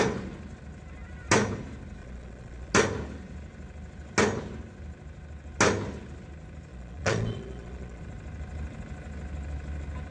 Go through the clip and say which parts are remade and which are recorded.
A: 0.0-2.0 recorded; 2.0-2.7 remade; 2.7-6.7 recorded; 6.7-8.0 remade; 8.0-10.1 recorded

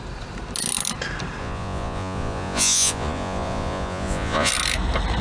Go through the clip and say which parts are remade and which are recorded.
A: 0.0-1.4 recorded; 1.4-4.5 remade; 4.5-5.2 recorded